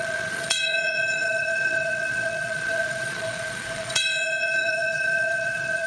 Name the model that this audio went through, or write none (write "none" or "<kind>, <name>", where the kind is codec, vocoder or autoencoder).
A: vocoder, Vocos